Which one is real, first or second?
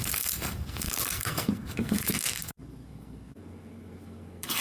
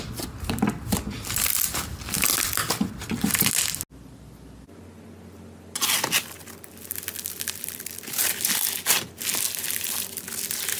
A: second